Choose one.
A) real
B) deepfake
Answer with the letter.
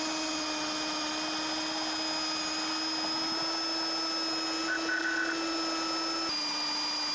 A